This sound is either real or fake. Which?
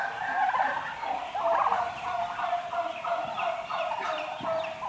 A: real